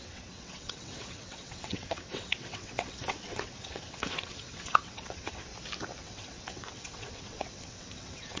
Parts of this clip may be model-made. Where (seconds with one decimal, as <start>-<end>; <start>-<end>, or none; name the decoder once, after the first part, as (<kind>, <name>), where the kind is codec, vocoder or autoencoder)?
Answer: 0.0-5.5 (vocoder, WaveNeXt); 6.0-8.4